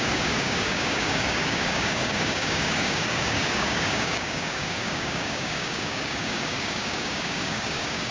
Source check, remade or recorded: remade